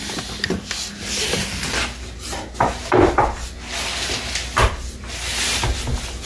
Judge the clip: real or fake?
real